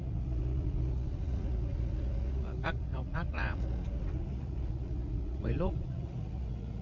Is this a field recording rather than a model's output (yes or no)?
no